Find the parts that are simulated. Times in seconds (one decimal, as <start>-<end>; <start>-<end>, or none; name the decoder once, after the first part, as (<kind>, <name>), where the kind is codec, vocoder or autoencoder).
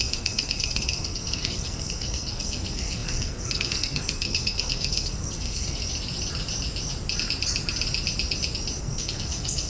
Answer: 0.0-5.8 (codec, SNAC); 8.8-9.7